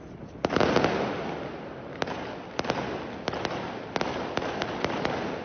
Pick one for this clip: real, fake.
real